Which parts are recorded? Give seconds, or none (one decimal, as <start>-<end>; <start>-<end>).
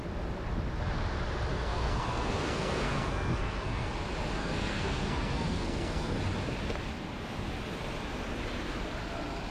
0.0-1.5; 3.9-4.4; 6.2-9.5